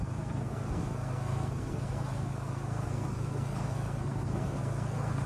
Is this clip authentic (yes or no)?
no